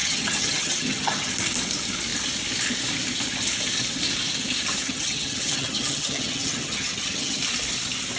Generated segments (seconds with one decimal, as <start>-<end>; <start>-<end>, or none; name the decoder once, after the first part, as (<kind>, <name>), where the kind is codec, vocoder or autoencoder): 0.0-1.3 (vocoder, HiFi-GAN); 4.8-7.4